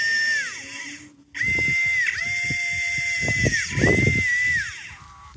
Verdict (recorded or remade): recorded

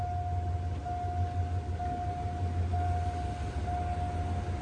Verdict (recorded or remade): recorded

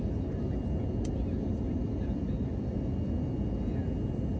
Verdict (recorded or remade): recorded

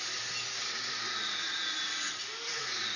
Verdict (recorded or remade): recorded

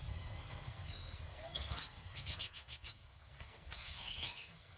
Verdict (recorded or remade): remade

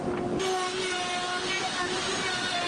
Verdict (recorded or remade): recorded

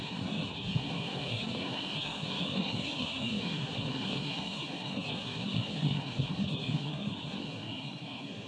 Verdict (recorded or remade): remade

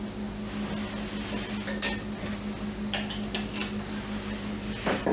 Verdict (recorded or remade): recorded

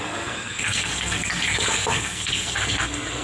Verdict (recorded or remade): remade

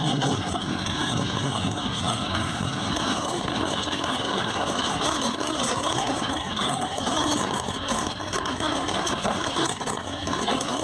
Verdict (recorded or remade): remade